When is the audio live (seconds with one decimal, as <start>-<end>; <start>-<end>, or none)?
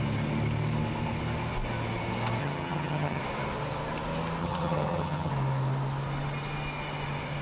0.0-2.4; 3.2-4.4; 5.3-7.4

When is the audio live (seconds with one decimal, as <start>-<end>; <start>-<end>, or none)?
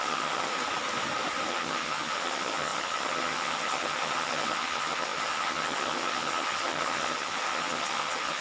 0.5-1.5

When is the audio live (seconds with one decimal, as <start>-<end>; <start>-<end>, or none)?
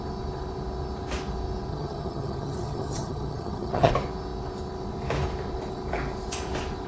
0.0-1.7; 3.9-6.9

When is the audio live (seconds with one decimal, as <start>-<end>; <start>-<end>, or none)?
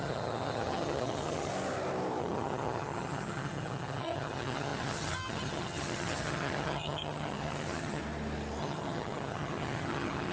1.5-2.2; 8.0-8.6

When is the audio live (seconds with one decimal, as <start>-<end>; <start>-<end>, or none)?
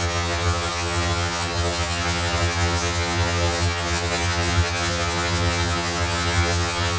none